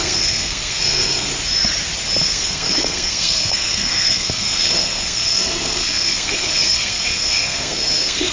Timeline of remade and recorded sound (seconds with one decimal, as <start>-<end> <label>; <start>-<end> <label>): 0.0-1.3 remade; 1.3-2.2 recorded; 2.2-8.3 remade

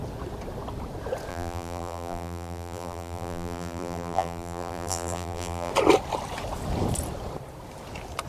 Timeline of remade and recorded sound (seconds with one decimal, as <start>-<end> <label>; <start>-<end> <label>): 0.0-1.3 recorded; 1.3-5.7 remade; 5.7-8.3 recorded

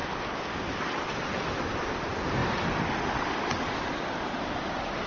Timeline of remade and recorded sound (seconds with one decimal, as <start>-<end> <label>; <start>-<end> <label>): 0.0-5.1 recorded

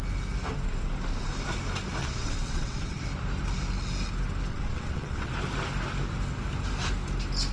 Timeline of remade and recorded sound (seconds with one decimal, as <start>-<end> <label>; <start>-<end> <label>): 0.0-2.0 recorded; 2.0-3.0 remade; 3.0-4.5 recorded; 4.5-5.3 remade; 5.3-7.5 recorded

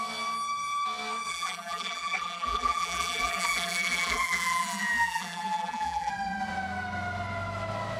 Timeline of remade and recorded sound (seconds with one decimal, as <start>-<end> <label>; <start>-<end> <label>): 0.0-1.3 recorded; 1.3-6.1 remade; 6.1-8.0 recorded

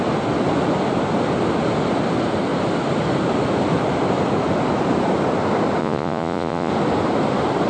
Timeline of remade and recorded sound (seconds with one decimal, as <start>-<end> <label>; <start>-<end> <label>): 0.0-5.8 recorded; 5.8-6.7 remade; 6.7-7.7 recorded

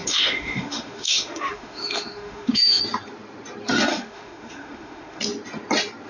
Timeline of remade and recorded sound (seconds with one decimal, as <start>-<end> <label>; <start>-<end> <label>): 0.0-2.8 remade; 2.8-3.9 recorded; 3.9-5.2 remade; 5.2-6.1 recorded